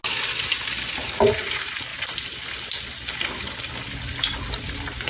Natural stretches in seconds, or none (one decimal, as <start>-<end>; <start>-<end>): 0.0-5.1

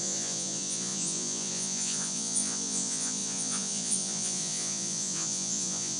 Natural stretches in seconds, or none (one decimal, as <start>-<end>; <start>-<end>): none

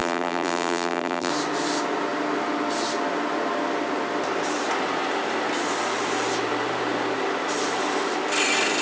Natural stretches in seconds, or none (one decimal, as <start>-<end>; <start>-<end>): 1.3-8.8